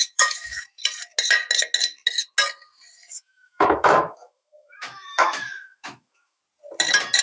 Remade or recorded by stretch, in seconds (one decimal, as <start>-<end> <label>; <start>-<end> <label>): 0.0-0.8 remade; 0.8-3.1 recorded; 3.1-6.4 remade; 6.4-7.2 recorded